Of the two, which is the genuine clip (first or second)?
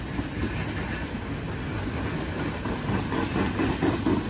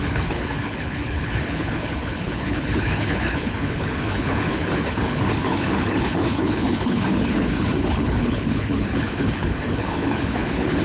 first